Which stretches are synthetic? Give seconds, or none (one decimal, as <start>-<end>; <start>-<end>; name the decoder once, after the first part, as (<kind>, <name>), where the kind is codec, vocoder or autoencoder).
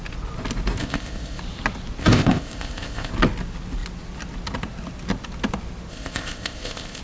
0.8-1.4 (codec, ZipCodec); 2.0-3.1; 5.9-7.0